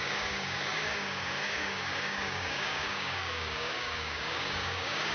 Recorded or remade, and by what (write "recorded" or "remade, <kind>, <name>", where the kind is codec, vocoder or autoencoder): remade, codec, DAC